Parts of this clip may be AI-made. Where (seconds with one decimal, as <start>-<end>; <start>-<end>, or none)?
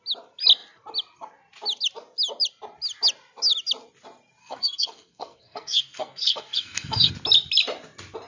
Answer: 4.4-7.1